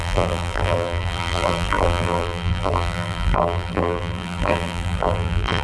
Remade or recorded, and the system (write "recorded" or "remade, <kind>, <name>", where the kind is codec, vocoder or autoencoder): remade, vocoder, BigVGAN v2